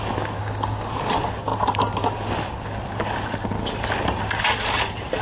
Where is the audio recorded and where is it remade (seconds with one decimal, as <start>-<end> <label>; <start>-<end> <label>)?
0.0-0.4 recorded; 0.4-0.9 remade; 0.9-5.2 recorded